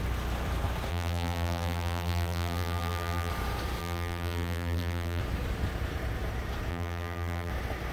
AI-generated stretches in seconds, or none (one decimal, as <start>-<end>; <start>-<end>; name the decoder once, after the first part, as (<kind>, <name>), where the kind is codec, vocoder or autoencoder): 0.9-3.3 (vocoder, BigVGAN v2); 3.8-5.2; 6.7-7.5